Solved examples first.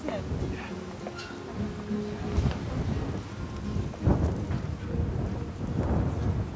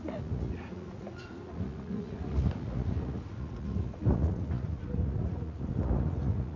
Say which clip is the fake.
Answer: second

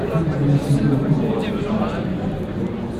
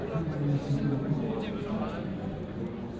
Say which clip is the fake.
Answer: first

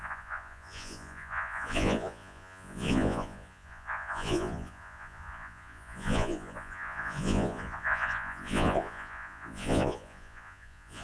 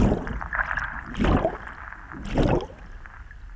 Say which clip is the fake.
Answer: first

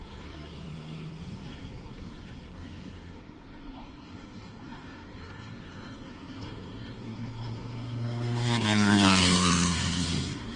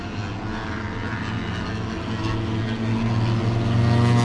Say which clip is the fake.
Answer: first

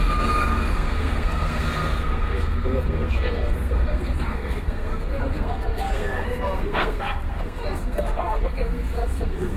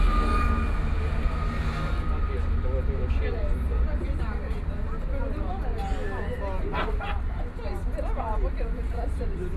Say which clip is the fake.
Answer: first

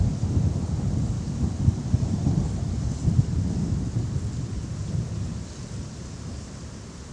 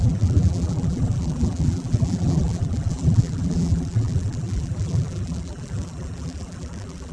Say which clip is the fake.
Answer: second